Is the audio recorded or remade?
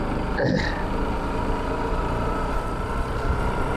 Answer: remade